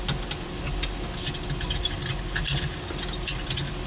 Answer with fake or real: real